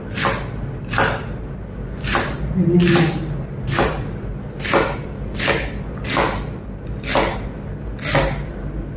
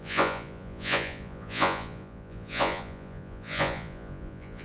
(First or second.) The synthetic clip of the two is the second